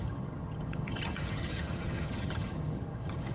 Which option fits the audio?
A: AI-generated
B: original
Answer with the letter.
A